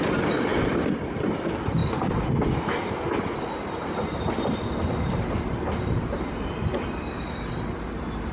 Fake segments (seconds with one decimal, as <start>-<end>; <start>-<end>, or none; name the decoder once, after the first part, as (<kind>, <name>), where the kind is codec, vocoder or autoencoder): 0.0-1.8 (vocoder, BigVGAN v2); 6.1-8.3